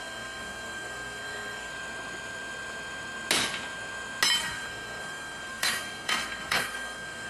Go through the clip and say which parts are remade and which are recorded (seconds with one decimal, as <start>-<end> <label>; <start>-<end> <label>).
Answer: 0.0-1.7 remade; 1.7-4.4 recorded; 4.4-7.3 remade